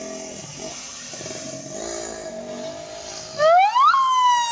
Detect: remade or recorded recorded